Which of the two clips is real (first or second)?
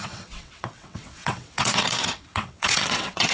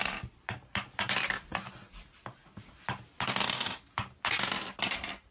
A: second